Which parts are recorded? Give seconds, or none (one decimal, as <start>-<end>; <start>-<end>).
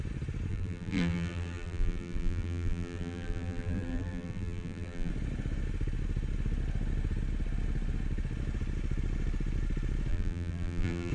0.0-0.5; 5.1-10.1